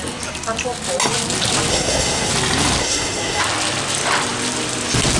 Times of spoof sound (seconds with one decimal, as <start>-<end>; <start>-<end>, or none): 1.7-2.3; 2.8-3.4